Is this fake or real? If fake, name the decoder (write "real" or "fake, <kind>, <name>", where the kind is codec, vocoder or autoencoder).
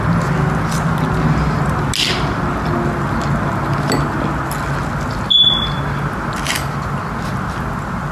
real